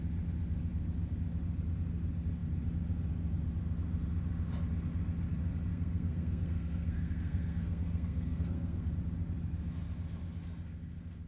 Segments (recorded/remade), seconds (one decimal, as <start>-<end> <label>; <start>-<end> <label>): 0.0-5.7 recorded; 5.7-8.9 remade; 8.9-11.3 recorded

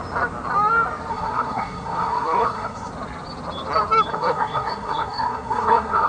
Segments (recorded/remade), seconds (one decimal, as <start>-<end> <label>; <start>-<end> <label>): 0.0-1.1 recorded; 1.1-2.9 remade; 2.9-4.1 recorded; 4.1-6.1 remade